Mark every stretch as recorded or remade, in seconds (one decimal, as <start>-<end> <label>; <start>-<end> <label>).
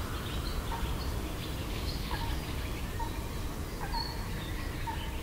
0.0-1.6 recorded; 1.6-2.3 remade; 2.3-5.2 recorded